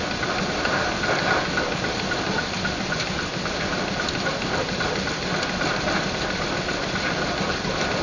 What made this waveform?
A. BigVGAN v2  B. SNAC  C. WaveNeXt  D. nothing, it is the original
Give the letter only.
D